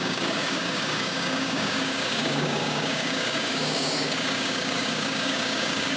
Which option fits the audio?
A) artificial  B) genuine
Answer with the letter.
A